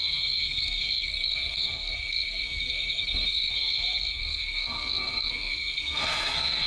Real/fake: fake